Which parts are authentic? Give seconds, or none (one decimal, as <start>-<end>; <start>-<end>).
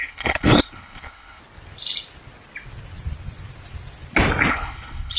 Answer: 1.4-4.5